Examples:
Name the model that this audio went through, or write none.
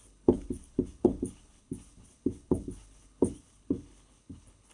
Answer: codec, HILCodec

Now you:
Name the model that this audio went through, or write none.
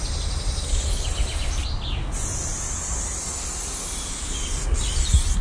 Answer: none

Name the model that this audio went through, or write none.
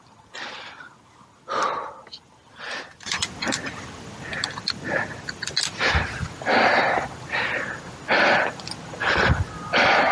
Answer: none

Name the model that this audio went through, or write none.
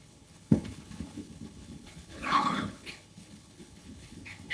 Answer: codec, HILCodec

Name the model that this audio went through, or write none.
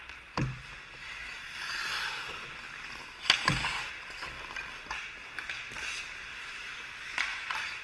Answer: none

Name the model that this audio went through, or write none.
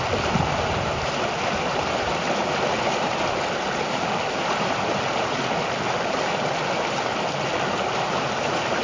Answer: none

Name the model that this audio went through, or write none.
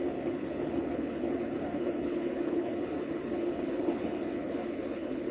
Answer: codec, HILCodec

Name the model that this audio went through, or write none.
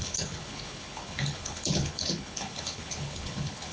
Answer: codec, HILCodec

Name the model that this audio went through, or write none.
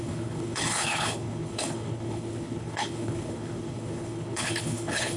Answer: codec, HILCodec